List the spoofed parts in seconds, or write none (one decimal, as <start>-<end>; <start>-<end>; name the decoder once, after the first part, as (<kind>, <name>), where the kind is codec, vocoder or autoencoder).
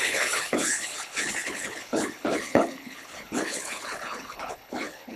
0.0-5.2 (codec, HILCodec)